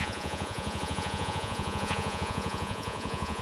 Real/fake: fake